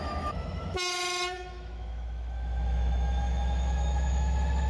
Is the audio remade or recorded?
remade